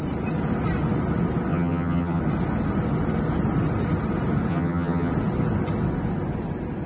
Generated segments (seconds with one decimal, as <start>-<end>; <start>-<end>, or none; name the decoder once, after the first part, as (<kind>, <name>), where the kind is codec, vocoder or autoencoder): 1.5-2.2 (vocoder, HiFi-GAN); 4.5-5.1